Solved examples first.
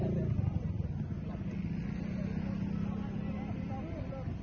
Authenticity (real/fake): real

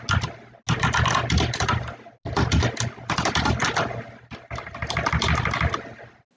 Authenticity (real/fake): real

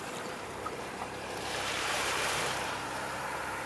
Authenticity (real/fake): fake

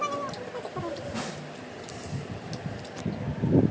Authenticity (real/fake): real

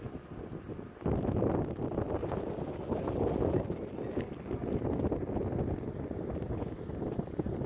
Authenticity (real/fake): real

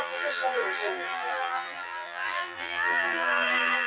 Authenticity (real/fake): fake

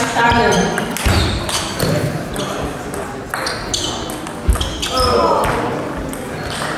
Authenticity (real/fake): real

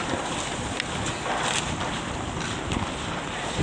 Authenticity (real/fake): real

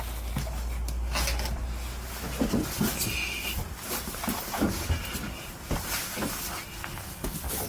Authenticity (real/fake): real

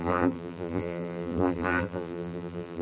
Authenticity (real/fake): fake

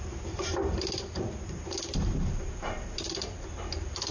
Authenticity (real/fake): fake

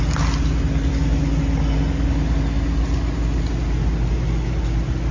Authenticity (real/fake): real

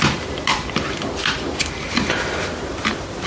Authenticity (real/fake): fake